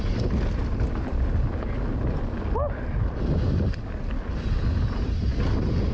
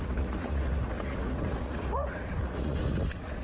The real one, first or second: first